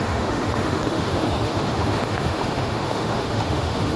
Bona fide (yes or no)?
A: no